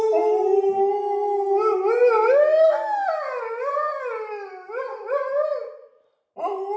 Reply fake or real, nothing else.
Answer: real